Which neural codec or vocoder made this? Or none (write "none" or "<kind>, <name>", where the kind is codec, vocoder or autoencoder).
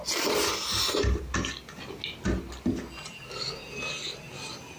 none